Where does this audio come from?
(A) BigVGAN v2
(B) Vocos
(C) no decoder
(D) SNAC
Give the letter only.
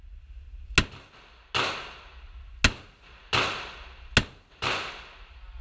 C